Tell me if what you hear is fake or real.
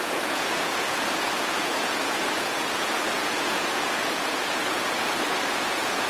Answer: fake